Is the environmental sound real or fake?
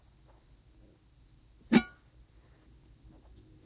real